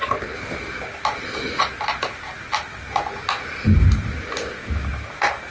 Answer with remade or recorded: recorded